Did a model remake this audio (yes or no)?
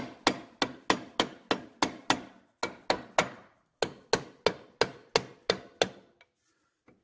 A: no